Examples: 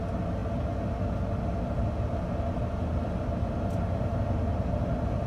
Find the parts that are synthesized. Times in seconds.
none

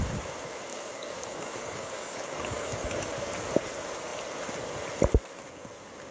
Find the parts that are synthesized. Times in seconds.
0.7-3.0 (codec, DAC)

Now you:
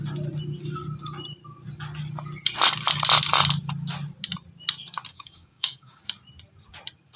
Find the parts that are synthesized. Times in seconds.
5.1-6.0 (codec, DAC)

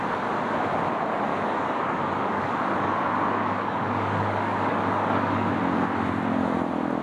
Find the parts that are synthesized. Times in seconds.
1.3-5.5 (codec, DAC)

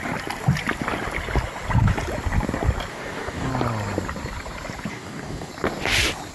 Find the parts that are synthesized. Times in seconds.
2.9-3.5 (codec, DAC); 4.9-5.5